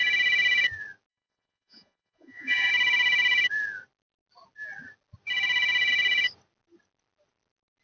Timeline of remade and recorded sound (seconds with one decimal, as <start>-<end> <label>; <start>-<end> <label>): 0.0-1.1 recorded; 1.1-2.7 remade; 2.7-7.8 recorded